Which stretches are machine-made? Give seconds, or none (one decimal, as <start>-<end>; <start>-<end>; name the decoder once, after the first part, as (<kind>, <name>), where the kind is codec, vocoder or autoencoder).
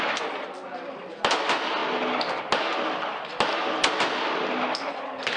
none